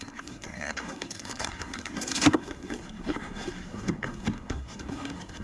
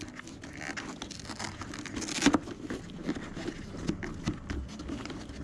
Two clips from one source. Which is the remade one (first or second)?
first